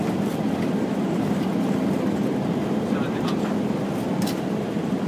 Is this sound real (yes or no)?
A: no